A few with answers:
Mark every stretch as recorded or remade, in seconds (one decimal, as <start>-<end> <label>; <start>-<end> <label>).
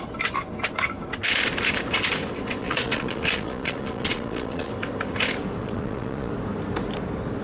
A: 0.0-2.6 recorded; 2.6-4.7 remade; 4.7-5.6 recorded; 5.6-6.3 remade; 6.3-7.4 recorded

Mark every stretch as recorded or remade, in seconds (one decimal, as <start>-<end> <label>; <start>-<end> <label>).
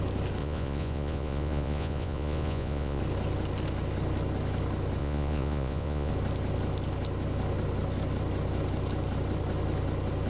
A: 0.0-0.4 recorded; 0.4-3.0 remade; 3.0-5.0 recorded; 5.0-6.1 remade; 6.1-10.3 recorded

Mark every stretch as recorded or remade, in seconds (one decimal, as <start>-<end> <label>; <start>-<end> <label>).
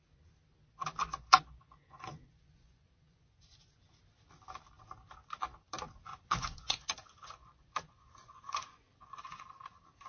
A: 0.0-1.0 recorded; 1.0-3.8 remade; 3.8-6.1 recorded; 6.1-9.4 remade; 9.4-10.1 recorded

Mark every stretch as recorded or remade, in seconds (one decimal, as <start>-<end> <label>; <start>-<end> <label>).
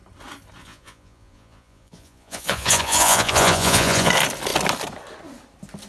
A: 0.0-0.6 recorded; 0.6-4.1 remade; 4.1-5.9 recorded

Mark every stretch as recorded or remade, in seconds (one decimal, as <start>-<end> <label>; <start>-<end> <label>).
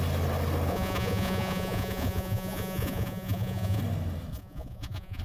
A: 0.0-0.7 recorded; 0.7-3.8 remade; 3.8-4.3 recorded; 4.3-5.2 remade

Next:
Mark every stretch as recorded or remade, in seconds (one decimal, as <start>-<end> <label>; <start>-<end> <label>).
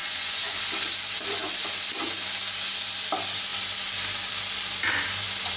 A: 0.0-0.6 remade; 0.6-5.6 recorded